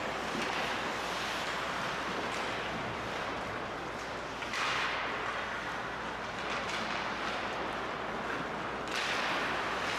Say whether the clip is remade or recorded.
recorded